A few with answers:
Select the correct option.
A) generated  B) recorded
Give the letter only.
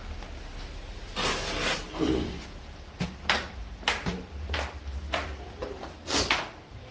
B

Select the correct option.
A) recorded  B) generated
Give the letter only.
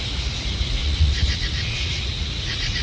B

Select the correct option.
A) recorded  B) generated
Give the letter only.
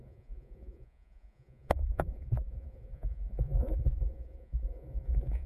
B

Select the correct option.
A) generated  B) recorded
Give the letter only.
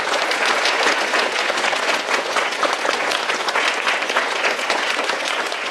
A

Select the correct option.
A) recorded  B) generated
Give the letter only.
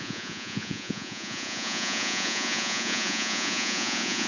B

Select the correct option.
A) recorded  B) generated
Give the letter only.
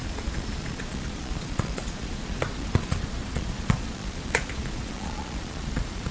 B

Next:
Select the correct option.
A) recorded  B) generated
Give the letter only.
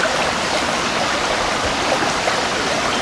A